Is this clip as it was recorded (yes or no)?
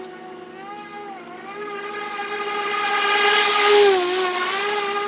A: yes